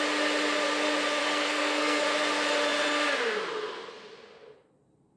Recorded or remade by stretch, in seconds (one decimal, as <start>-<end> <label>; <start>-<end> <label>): 0.0-1.2 recorded; 1.2-2.0 remade; 2.0-5.2 recorded